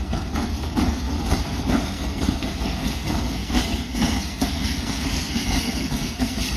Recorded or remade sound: remade